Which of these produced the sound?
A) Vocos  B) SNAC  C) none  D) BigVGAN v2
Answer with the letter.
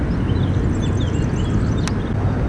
C